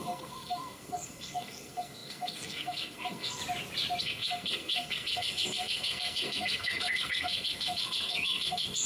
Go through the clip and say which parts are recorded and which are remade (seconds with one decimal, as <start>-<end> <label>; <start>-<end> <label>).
0.0-3.4 remade; 3.4-4.0 recorded; 4.0-8.9 remade